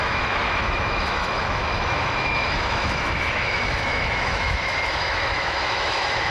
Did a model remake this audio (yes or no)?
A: yes